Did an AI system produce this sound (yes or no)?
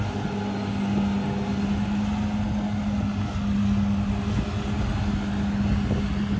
no